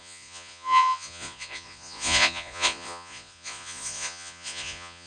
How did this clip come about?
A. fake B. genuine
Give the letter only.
A